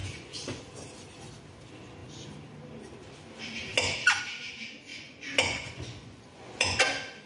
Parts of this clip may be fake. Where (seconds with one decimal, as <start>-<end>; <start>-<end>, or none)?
0.0-0.6; 4.9-6.8